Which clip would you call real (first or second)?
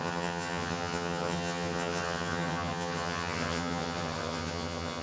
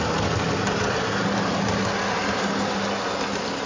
second